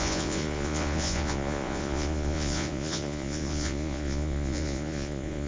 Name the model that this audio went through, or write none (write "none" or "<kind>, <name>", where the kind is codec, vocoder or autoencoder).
vocoder, Vocos